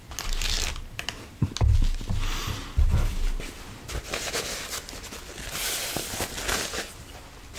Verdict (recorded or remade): recorded